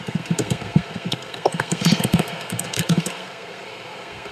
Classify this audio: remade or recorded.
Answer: remade